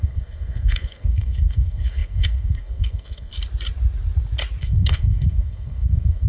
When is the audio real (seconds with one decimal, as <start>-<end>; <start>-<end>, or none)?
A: 3.3-4.6